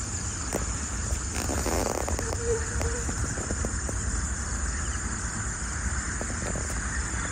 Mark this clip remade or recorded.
recorded